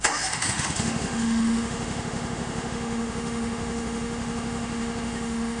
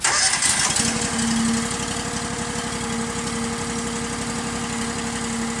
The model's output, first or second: first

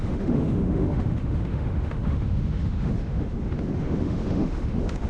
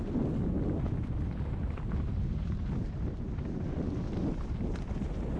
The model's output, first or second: first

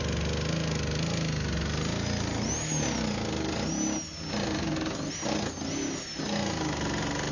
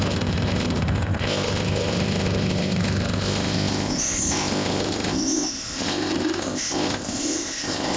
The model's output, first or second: second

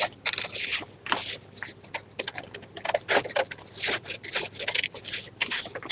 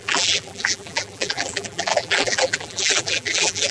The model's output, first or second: second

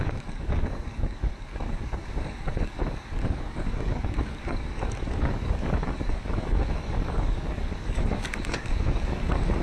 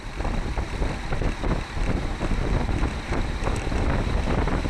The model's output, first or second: first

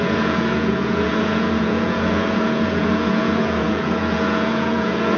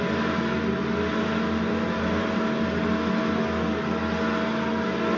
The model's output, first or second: first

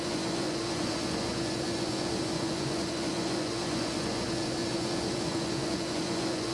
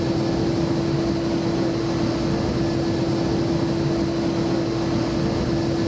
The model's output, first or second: first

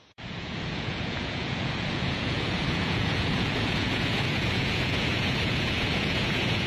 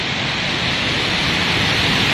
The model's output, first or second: first